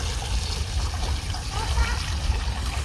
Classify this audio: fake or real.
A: real